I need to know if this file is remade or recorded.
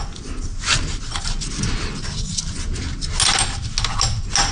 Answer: recorded